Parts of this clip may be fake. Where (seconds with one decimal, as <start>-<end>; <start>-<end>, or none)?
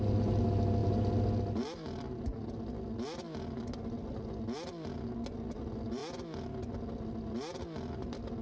none